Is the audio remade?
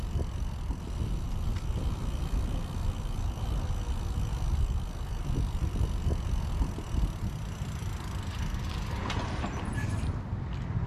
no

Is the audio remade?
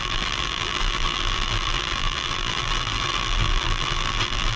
yes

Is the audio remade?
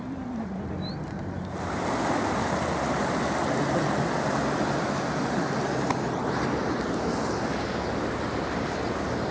no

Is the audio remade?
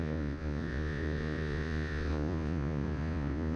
yes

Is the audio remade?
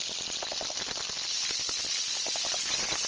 no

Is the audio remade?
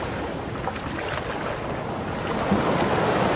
no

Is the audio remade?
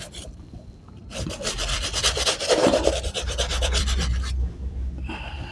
yes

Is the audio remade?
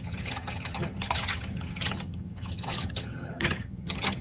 yes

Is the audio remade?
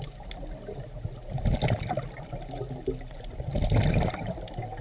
no